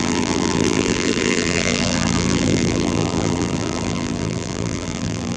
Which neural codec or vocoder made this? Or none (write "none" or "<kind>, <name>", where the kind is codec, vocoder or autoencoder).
vocoder, BigVGAN v2